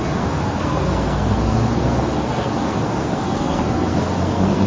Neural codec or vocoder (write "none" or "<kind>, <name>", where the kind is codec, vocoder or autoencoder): codec, SNAC